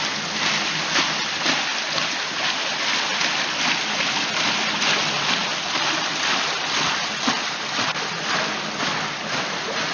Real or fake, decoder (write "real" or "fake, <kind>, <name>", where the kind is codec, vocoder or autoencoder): real